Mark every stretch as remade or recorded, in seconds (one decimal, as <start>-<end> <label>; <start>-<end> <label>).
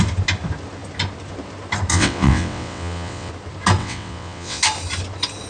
0.0-1.9 recorded; 1.9-3.3 remade; 3.3-3.8 recorded; 3.8-4.6 remade; 4.6-5.5 recorded